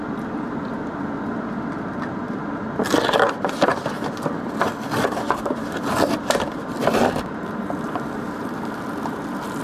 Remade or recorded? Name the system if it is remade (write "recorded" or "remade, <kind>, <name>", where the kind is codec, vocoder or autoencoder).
remade, vocoder, BigVGAN v2